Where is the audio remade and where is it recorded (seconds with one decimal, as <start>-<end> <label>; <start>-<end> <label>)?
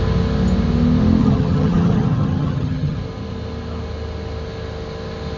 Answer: 0.0-1.2 recorded; 1.2-3.0 remade; 3.0-5.4 recorded